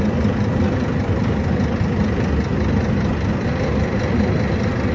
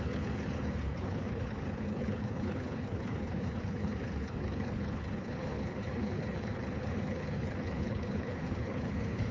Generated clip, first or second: second